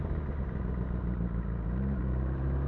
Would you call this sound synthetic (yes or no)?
yes